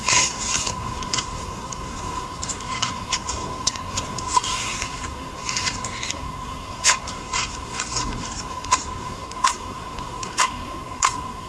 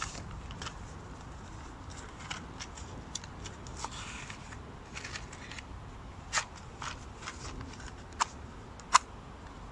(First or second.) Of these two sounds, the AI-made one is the first